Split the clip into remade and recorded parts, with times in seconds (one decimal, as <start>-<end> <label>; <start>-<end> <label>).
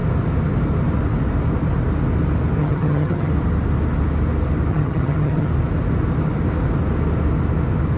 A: 0.0-2.6 recorded; 2.6-3.3 remade; 3.3-4.7 recorded; 4.7-5.5 remade; 5.5-8.0 recorded